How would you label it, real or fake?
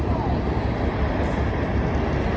real